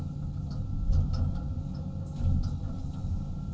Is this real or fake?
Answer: real